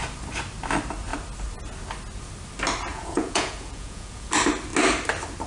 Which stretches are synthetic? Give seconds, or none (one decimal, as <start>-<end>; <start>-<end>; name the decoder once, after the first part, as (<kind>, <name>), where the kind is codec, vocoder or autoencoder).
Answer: 2.9-4.3 (vocoder, Vocos)